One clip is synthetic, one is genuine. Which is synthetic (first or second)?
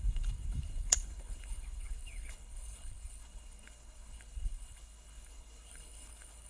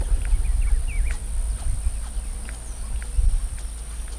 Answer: first